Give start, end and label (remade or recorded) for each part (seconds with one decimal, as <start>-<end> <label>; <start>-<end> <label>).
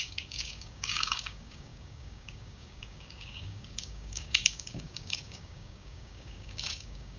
0.0-7.2 remade